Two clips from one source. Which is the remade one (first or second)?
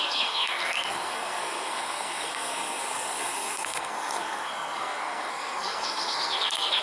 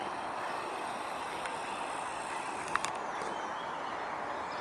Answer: first